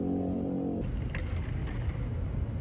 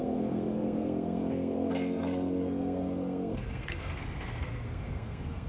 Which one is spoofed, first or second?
second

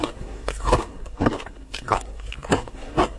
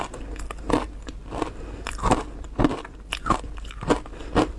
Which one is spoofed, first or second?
first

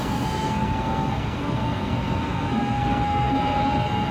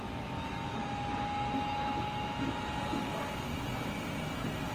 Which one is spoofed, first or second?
first